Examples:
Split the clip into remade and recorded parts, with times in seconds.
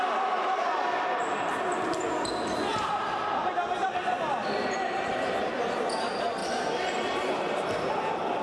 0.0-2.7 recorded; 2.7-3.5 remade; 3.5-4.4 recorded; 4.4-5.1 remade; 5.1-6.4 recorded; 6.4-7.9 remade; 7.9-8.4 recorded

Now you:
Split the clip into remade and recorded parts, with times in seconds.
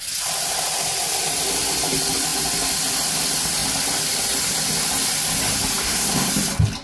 0.0-5.8 recorded; 5.8-6.3 remade; 6.3-6.8 recorded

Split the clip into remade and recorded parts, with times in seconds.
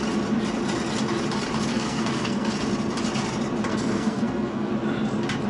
0.0-1.7 recorded; 1.7-2.5 remade; 2.5-3.7 recorded; 3.7-4.7 remade; 4.7-5.5 recorded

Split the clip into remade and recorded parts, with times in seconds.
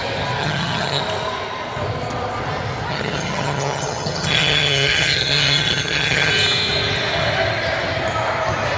0.0-0.4 recorded; 0.4-1.0 remade; 1.0-2.9 recorded; 2.9-6.3 remade; 6.3-8.8 recorded